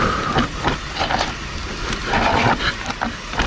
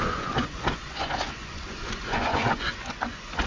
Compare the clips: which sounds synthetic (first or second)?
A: second